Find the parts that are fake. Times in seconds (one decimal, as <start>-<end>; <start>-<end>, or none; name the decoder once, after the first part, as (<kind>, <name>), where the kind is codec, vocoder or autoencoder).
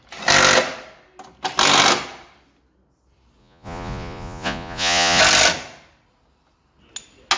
3.4-5.2 (vocoder, Vocos)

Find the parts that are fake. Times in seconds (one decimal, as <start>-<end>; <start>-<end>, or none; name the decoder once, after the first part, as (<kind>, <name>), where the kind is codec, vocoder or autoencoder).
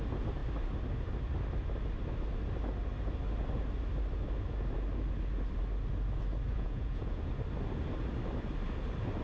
6.5-7.2 (vocoder, Vocos)